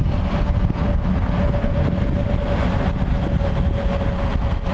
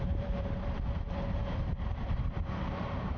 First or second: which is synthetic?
second